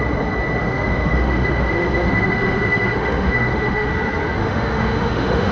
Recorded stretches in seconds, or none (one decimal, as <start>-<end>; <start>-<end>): 0.0-0.6; 3.9-4.4